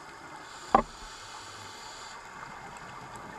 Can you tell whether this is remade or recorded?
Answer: recorded